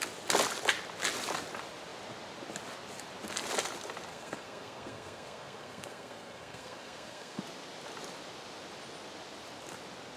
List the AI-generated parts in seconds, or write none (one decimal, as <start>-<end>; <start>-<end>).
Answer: 4.1-7.4